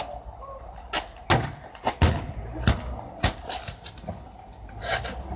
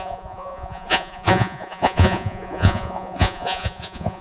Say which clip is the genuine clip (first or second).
first